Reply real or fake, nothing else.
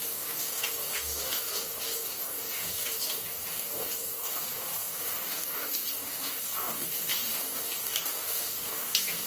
fake